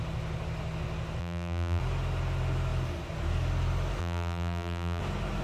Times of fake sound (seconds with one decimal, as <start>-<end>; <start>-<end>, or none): 1.2-1.8; 4.0-5.0